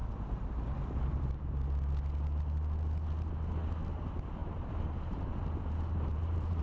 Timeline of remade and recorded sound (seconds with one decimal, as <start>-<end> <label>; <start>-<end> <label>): 0.0-1.5 remade; 1.5-4.4 recorded; 4.4-6.6 remade